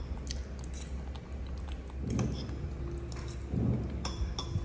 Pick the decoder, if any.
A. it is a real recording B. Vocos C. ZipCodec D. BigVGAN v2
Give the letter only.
A